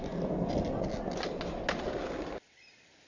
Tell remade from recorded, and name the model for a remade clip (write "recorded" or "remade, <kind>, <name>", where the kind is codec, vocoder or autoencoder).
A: recorded